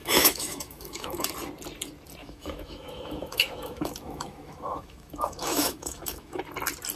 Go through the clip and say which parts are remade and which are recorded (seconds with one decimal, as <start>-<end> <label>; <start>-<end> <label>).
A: 0.0-1.3 remade; 1.3-2.2 recorded; 2.2-6.4 remade; 6.4-7.0 recorded